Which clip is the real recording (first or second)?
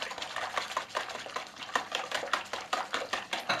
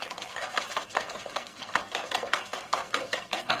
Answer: first